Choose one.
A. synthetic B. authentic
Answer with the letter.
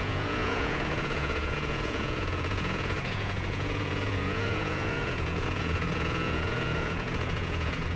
A